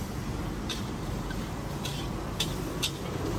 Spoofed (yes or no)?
yes